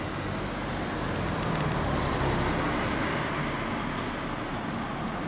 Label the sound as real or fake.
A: real